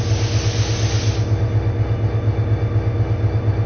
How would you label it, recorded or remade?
recorded